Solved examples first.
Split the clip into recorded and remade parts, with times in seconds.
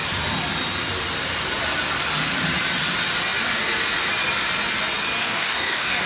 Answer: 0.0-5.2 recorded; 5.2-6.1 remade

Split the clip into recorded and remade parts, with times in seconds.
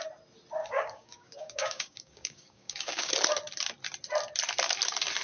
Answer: 0.0-0.6 recorded; 0.6-3.1 remade; 3.1-5.2 recorded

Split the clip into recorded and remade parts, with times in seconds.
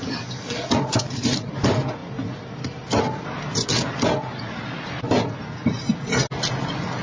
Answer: 0.0-7.0 recorded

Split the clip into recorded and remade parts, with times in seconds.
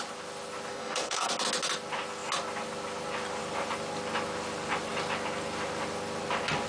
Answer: 0.0-0.7 recorded; 0.7-1.3 remade; 1.3-6.7 recorded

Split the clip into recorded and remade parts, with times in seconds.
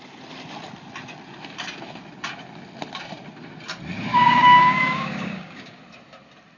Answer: 0.0-4.1 recorded; 4.1-5.8 remade; 5.8-6.6 recorded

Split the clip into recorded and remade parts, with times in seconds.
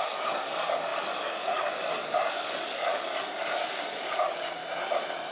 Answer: 0.0-4.6 remade; 4.6-5.3 recorded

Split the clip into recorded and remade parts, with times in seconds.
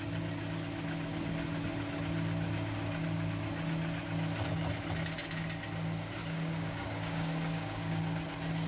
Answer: 0.0-6.2 recorded; 6.2-8.0 remade; 8.0-8.7 recorded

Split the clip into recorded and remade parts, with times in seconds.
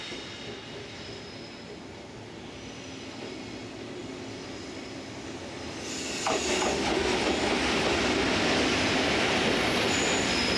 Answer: 0.0-10.6 recorded